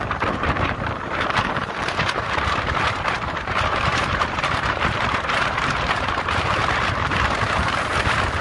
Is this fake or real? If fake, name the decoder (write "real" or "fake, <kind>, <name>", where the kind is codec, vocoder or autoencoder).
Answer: fake, vocoder, BigVGAN v2